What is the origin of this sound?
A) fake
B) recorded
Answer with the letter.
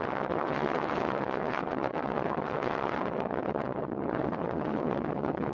A